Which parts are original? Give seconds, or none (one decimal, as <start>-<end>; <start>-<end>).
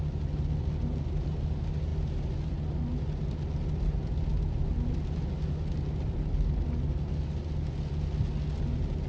0.0-9.1